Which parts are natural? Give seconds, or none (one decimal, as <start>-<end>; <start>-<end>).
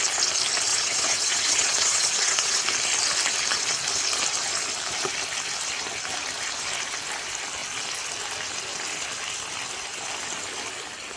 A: 0.0-0.7; 2.6-11.2